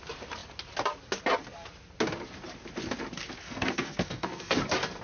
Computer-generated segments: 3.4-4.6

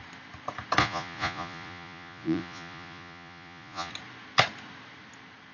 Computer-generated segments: 0.8-3.9

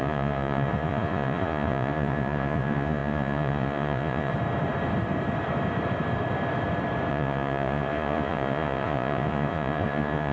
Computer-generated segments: 0.0-4.3; 7.1-10.3

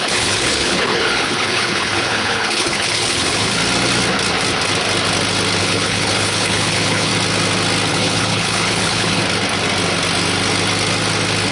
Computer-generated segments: 0.0-3.6; 5.6-7.1; 7.9-9.2

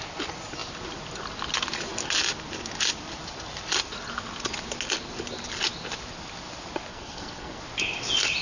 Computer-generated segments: 6.9-7.6

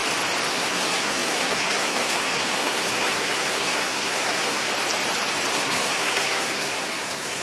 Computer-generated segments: 0.5-4.7; 5.5-7.4